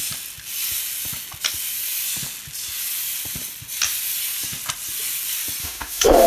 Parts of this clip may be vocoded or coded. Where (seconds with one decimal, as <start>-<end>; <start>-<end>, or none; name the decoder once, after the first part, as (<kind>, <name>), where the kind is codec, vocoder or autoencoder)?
5.6-6.3 (autoencoder, DAC-VAE)